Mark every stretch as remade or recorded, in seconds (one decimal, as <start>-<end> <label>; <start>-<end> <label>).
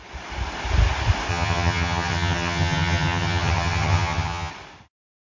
0.0-1.3 recorded; 1.3-4.5 remade; 4.5-5.3 recorded